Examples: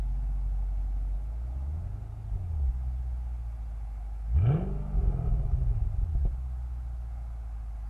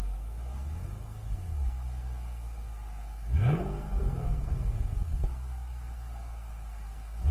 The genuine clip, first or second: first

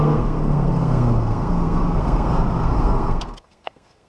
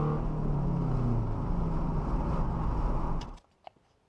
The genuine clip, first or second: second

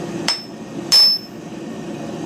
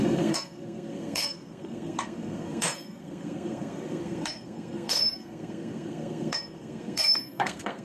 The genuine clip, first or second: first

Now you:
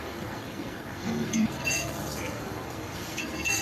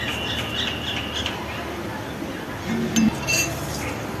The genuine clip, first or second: second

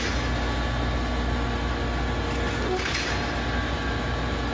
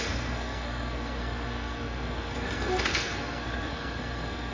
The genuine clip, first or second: first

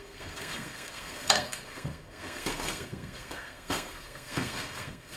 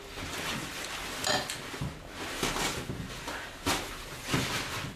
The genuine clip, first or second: second